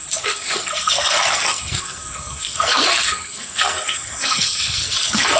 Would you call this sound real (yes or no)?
no